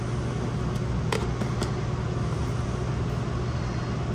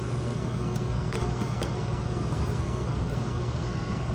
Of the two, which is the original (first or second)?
first